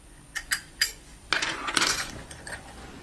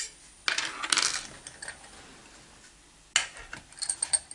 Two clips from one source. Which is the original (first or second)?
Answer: second